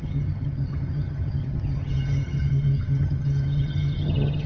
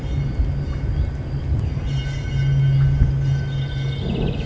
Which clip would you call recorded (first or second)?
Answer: second